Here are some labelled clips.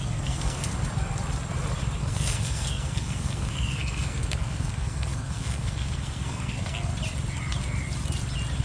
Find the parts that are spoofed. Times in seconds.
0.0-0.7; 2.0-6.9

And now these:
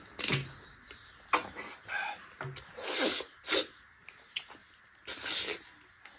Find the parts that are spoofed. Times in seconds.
none

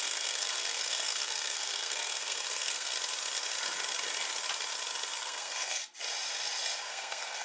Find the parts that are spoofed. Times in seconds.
0.0-2.9; 5.2-5.8; 6.9-7.4

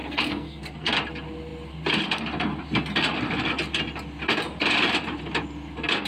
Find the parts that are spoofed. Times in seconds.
0.0-0.9

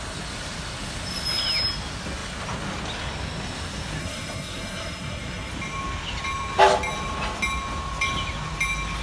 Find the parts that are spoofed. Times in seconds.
4.0-5.5

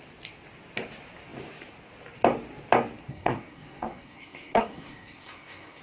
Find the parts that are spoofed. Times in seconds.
3.1-5.8